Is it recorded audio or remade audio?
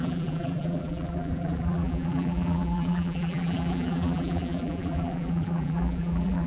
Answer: remade